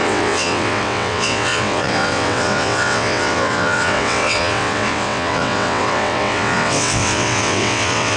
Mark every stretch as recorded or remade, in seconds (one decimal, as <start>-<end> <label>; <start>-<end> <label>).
0.0-8.2 remade